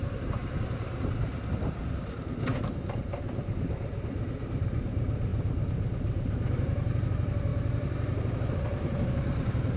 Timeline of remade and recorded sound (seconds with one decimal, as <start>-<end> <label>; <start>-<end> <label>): 0.0-9.8 remade